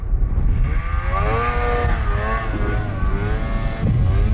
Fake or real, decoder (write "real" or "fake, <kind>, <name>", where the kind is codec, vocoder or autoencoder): real